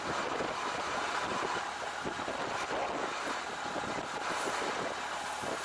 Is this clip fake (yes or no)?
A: no